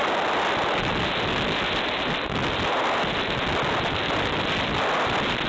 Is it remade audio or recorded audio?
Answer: recorded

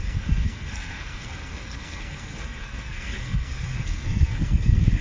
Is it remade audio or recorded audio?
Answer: remade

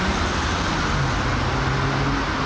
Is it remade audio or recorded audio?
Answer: recorded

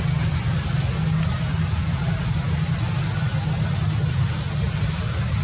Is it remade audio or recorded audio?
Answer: recorded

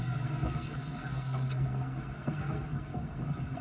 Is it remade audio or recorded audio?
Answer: remade